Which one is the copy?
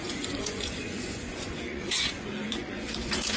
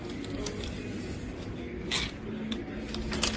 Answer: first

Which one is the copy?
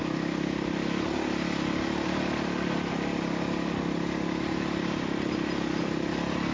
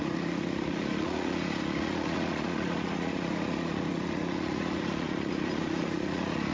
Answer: second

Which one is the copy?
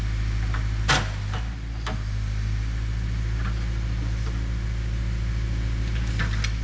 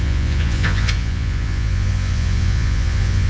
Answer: second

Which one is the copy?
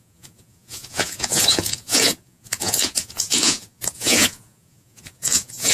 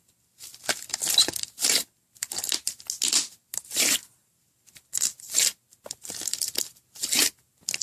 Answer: first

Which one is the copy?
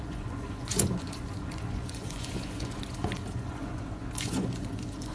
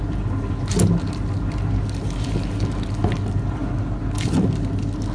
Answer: first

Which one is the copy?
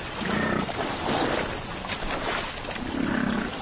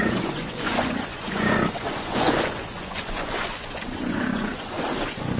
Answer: second